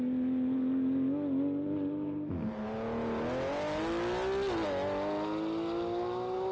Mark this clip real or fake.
real